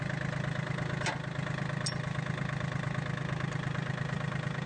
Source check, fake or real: real